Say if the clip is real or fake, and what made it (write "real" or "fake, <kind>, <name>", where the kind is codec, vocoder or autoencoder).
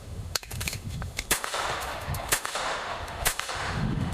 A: fake, autoencoder, DAC-VAE